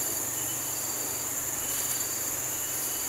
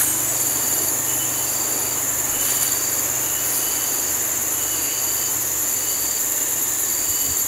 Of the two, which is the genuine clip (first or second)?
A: second